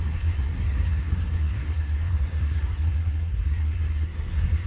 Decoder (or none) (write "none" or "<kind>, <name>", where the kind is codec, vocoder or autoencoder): codec, SNAC